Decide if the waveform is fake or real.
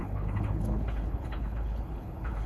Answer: fake